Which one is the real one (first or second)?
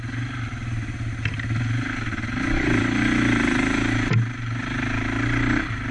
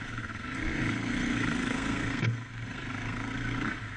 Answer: first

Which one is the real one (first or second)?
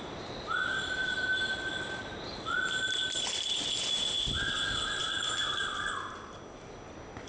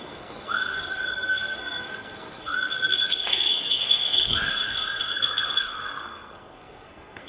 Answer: first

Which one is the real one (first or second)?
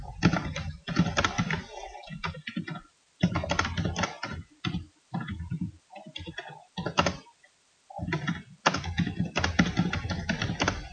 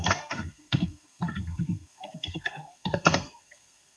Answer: first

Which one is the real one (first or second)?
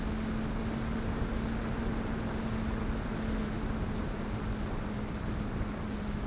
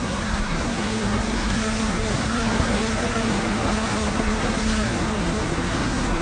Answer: first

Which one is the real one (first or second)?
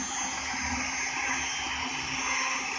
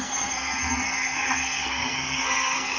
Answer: first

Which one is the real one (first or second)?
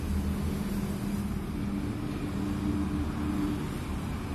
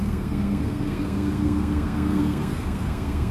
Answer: first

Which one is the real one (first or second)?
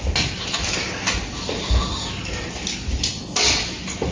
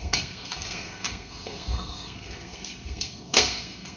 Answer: first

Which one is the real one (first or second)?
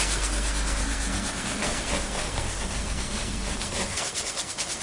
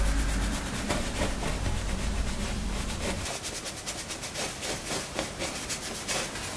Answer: second